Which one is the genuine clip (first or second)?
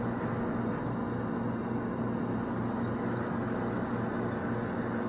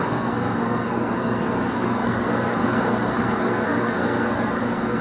first